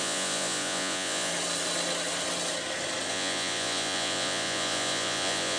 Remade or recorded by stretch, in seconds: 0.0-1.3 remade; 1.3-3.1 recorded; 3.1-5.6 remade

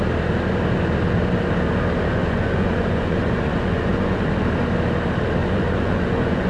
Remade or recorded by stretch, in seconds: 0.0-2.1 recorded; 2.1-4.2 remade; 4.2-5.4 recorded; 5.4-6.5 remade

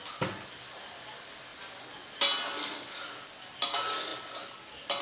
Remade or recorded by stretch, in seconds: 0.0-5.0 recorded

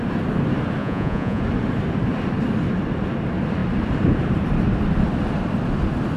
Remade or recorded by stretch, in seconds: 0.0-0.8 recorded; 0.8-1.4 remade; 1.4-6.2 recorded